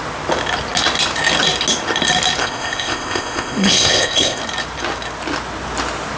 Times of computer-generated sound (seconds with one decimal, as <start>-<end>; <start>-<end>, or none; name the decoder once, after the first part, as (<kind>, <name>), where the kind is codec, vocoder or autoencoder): 2.4-4.4 (codec, ZipCodec)